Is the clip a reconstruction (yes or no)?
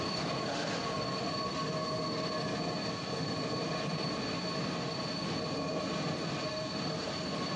no